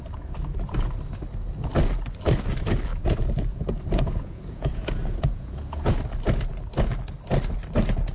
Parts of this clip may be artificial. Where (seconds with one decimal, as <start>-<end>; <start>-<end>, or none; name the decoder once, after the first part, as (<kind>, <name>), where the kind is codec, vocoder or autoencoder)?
2.9-6.0 (vocoder, Vocos)